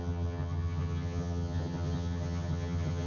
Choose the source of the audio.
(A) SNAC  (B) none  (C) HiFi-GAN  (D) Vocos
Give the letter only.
C